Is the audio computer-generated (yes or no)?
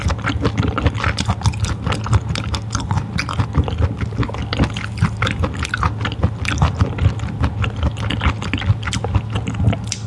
no